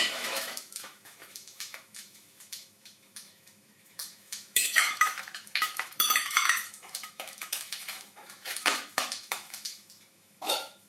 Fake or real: fake